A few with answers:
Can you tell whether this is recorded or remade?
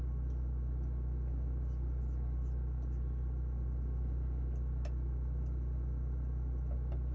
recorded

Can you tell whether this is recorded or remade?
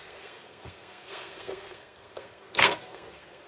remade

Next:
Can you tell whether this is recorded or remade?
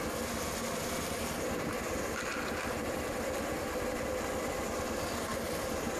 recorded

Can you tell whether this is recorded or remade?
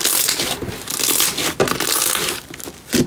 recorded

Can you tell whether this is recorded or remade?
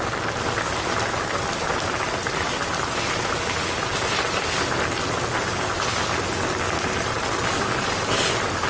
recorded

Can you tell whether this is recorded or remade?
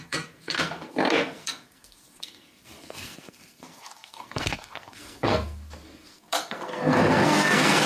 remade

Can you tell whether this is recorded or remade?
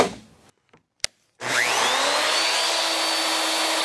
recorded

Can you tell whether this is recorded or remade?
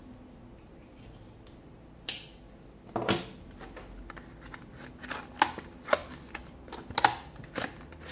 recorded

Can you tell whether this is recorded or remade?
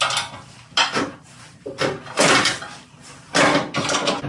recorded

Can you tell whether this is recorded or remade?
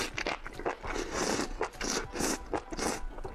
recorded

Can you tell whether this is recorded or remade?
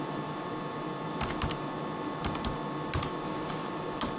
recorded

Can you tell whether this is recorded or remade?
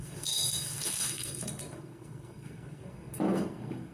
remade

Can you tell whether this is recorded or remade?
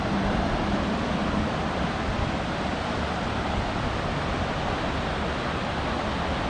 recorded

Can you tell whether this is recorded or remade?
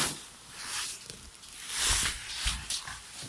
recorded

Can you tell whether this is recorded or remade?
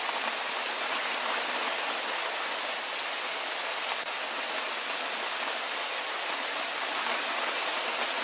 recorded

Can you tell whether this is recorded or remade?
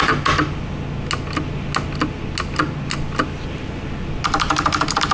recorded